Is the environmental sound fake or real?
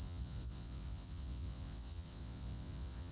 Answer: fake